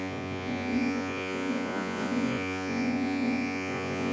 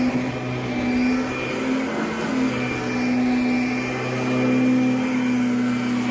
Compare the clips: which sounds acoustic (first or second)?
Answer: second